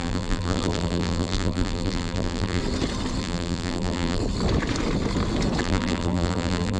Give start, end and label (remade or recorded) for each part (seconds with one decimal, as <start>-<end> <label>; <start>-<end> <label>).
0.0-2.6 remade; 2.6-3.2 recorded; 3.2-4.2 remade; 4.2-5.6 recorded; 5.6-6.8 remade